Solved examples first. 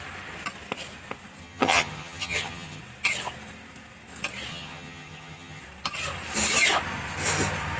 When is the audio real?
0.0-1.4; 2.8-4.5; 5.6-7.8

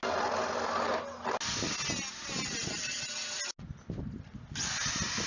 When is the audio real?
0.0-5.3

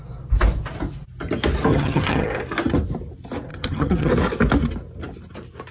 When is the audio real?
0.0-1.7; 2.3-3.5; 4.1-5.7

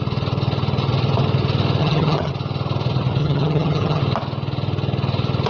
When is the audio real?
0.0-1.8; 2.3-3.2; 4.0-5.5

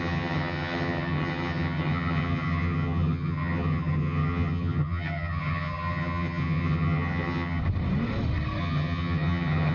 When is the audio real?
7.6-8.6

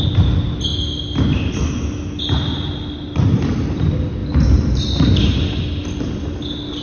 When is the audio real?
0.0-6.8